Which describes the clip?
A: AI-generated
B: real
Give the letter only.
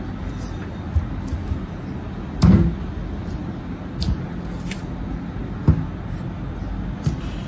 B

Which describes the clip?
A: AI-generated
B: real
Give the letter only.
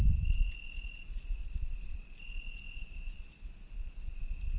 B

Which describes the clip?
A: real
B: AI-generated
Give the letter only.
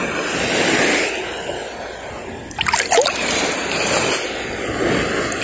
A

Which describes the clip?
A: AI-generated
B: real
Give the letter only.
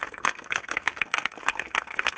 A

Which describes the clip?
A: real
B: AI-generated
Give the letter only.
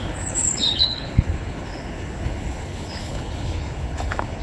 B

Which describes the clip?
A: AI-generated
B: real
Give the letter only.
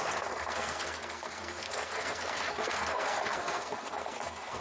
A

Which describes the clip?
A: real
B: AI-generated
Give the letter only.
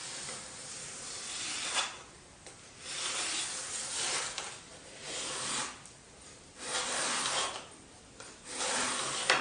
A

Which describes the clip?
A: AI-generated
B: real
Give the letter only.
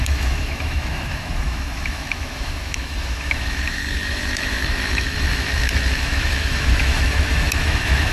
A